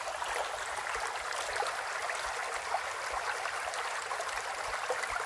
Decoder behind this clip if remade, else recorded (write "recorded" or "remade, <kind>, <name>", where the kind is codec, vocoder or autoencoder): recorded